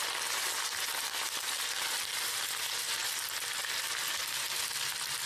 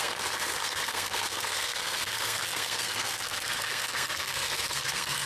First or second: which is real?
first